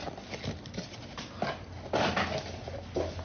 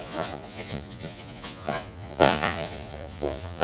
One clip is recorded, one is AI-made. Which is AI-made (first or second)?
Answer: second